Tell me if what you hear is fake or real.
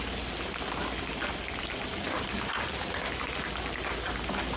real